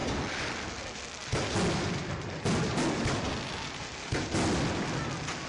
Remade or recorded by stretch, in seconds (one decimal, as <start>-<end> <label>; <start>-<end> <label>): 0.0-5.5 recorded